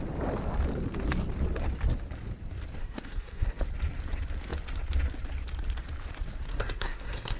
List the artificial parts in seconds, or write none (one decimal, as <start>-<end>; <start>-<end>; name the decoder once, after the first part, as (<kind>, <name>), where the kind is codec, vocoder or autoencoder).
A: 2.8-3.6 (codec, SNAC); 6.5-7.4